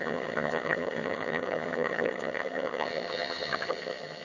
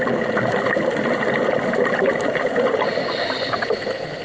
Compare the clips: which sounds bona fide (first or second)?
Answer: second